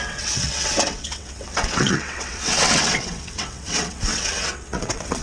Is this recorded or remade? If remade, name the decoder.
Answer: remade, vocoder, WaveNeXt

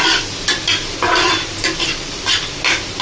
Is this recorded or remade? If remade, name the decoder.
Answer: recorded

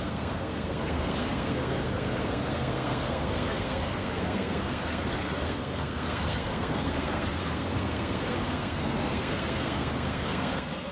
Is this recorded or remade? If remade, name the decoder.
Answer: remade, codec, SNAC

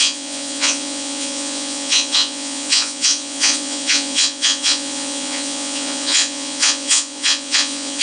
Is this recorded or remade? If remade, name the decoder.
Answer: remade, vocoder, Vocos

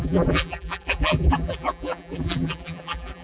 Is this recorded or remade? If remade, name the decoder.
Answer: remade, vocoder, BigVGAN v2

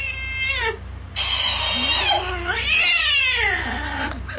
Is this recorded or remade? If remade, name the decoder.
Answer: recorded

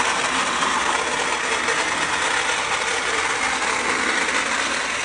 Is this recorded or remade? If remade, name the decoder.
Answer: recorded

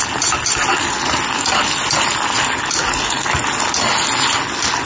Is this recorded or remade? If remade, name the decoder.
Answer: recorded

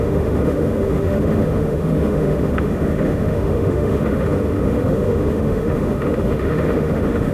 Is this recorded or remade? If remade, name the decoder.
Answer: remade, autoencoder, DAC-VAE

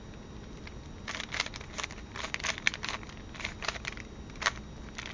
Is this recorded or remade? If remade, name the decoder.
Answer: recorded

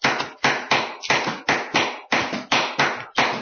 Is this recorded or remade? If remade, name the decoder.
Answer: recorded